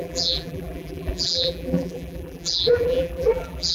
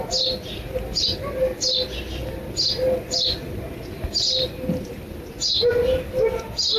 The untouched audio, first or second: second